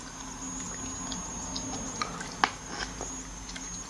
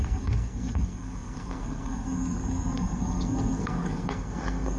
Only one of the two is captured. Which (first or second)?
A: first